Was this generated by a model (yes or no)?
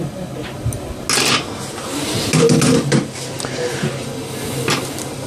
no